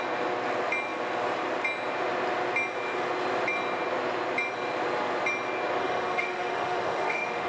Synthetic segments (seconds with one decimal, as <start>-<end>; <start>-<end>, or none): 5.8-7.5